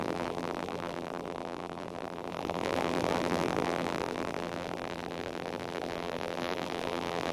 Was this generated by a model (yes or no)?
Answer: yes